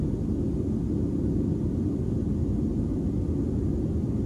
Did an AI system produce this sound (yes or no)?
no